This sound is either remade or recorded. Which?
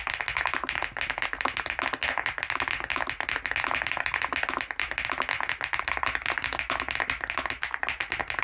recorded